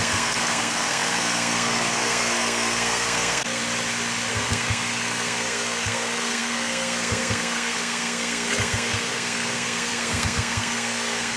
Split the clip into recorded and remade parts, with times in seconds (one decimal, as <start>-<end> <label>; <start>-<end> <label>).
0.0-3.6 remade; 3.6-4.3 recorded; 4.3-11.4 remade